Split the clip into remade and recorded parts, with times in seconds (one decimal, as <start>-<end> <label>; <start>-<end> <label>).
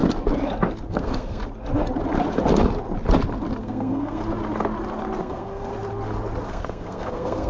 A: 0.0-0.9 recorded; 0.9-1.4 remade; 1.4-3.6 recorded; 3.6-4.2 remade; 4.2-5.2 recorded; 5.2-5.7 remade; 5.7-6.5 recorded; 6.5-7.5 remade